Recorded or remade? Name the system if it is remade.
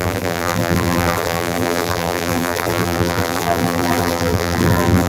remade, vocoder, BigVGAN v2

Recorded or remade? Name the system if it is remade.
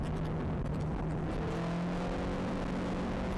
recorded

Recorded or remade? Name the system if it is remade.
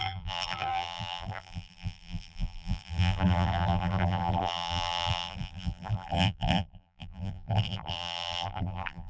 remade, vocoder, BigVGAN v2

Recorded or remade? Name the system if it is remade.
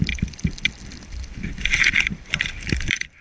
remade, vocoder, BigVGAN v2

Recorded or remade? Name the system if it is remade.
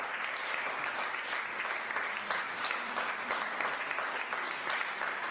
recorded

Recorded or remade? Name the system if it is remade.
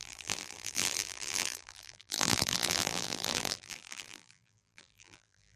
remade, vocoder, BigVGAN v2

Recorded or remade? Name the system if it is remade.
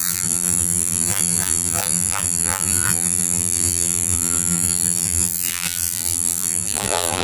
remade, vocoder, BigVGAN v2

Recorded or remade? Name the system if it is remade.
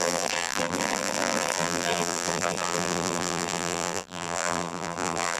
remade, vocoder, BigVGAN v2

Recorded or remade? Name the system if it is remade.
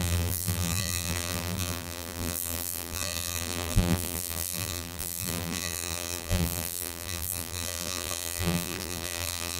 remade, vocoder, BigVGAN v2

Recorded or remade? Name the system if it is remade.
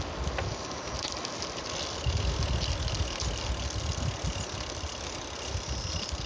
recorded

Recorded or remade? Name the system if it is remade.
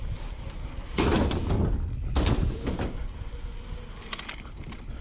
recorded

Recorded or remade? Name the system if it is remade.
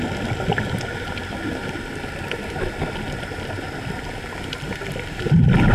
recorded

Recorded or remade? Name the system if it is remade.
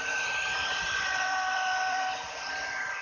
remade, vocoder, BigVGAN v2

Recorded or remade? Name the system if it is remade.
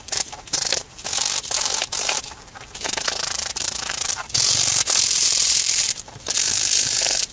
remade, vocoder, BigVGAN v2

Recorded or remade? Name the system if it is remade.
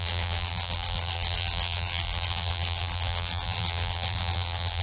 remade, vocoder, BigVGAN v2